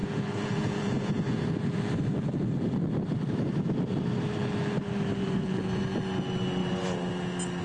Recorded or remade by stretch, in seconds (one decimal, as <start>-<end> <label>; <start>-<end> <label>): 0.0-1.9 remade; 1.9-5.2 recorded; 5.2-5.8 remade; 5.8-7.6 recorded